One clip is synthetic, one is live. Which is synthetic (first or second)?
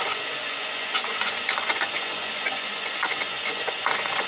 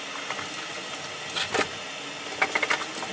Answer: first